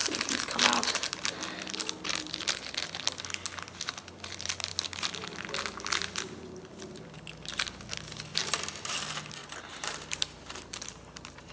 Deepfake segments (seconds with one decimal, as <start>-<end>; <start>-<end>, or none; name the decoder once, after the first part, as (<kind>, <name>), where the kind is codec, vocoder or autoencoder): 0.0-1.1 (vocoder, BigVGAN v2); 8.3-9.0; 9.4-11.5